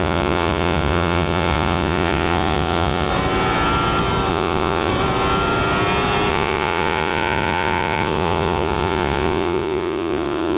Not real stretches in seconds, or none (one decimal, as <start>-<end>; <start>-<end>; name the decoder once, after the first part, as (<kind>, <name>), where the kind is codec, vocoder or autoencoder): 0.0-3.1 (vocoder, Vocos); 4.3-4.9; 6.3-10.6